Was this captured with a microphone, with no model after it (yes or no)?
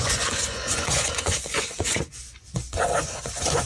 no